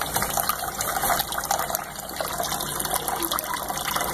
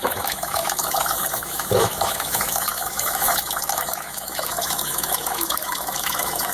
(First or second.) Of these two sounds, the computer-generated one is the second